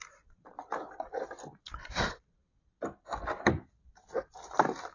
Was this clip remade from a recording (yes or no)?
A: no